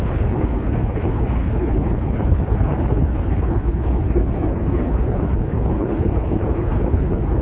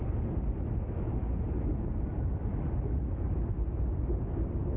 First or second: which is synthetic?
first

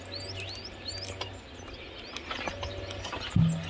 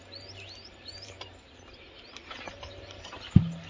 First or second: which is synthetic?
second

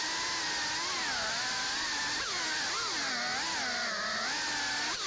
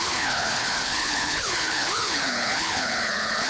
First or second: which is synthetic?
second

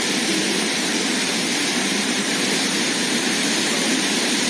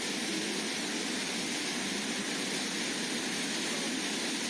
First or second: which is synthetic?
first